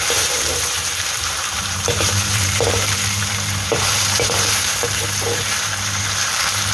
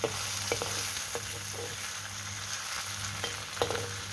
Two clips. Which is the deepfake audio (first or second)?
first